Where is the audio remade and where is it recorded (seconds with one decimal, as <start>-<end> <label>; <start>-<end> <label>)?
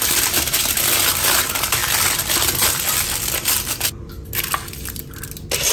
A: 0.0-5.7 recorded